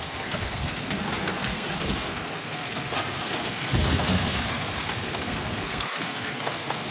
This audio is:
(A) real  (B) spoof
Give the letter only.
B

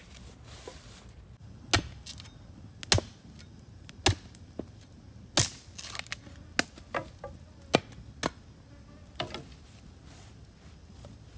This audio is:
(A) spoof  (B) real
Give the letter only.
B